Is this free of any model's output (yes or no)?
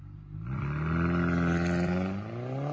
yes